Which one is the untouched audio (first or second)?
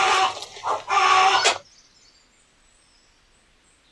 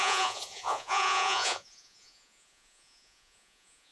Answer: first